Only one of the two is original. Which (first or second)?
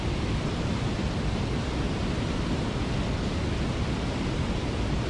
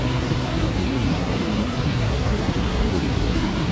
first